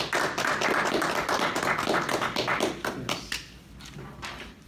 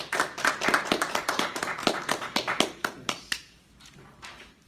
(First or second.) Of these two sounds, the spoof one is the second